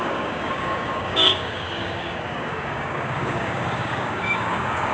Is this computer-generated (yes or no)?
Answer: yes